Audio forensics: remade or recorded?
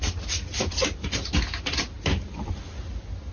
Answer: recorded